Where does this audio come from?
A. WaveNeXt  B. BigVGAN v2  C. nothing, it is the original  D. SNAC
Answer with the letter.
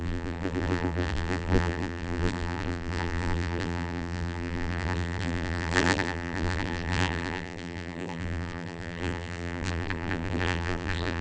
B